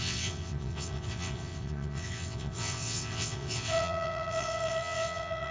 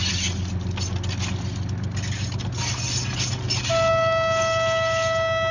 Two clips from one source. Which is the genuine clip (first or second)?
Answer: second